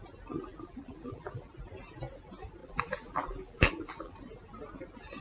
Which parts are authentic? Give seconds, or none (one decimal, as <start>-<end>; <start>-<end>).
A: 0.0-0.5; 1.5-2.6; 4.2-5.2